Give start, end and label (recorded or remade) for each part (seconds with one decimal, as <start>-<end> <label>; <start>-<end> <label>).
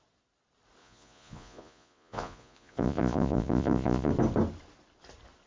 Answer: 0.0-0.8 recorded; 0.8-4.1 remade; 4.1-5.5 recorded